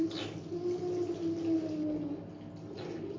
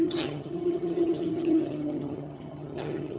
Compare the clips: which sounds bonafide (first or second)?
first